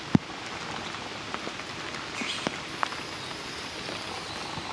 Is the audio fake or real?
real